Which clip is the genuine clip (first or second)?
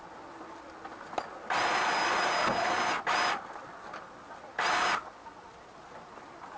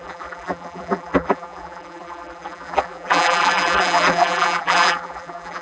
first